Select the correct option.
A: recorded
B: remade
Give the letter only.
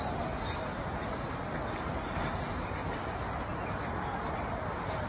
A